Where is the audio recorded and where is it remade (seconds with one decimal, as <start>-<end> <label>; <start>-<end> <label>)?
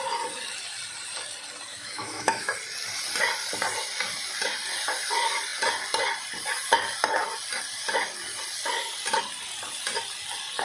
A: 0.0-1.7 recorded; 1.7-2.5 remade; 2.5-10.6 recorded